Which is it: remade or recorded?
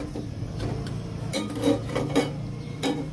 recorded